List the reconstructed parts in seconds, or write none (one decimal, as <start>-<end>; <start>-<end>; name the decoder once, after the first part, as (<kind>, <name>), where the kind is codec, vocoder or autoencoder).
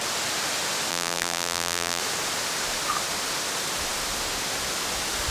0.9-2.0 (vocoder, BigVGAN v2)